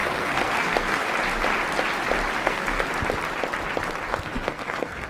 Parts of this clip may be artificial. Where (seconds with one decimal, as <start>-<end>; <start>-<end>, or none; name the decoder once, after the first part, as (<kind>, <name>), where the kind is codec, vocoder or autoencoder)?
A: 0.0-1.1 (codec, SNAC); 2.4-2.9; 4.1-5.1